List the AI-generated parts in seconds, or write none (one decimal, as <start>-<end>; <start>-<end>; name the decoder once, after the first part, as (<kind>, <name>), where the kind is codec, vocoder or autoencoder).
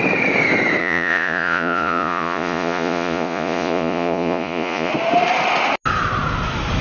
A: 0.8-4.9 (vocoder, Vocos)